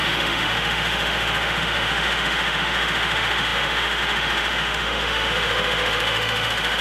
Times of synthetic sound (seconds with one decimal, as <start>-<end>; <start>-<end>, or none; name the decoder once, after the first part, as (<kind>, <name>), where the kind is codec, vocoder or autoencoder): 0.0-6.8 (autoencoder, DAC-VAE)